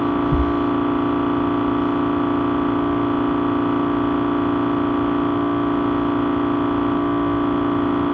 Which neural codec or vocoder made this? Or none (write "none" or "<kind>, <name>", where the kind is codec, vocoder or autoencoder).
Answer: none